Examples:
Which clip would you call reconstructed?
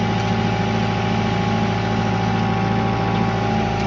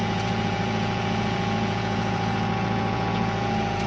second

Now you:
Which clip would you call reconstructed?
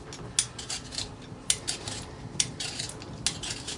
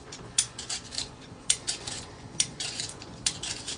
second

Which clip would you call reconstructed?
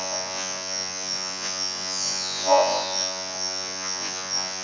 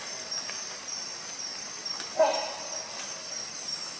first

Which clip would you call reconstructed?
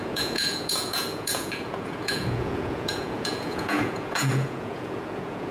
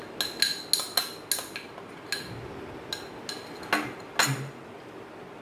first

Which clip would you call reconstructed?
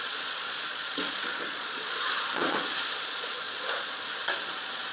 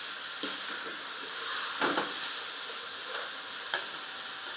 first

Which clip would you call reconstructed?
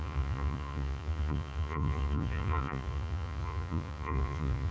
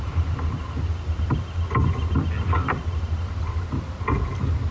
first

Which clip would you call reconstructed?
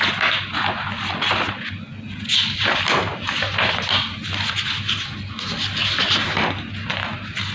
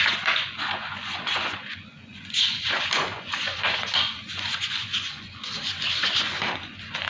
second